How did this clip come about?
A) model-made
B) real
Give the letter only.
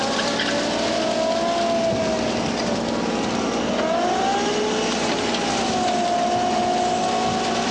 B